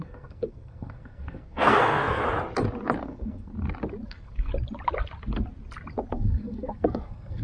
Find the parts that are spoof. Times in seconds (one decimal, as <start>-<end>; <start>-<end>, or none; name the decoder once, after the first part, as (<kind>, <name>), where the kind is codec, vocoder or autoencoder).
0.0-2.2 (codec, SNAC); 3.0-3.5; 4.1-4.5; 6.1-7.4